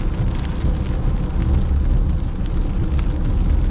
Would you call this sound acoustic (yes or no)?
yes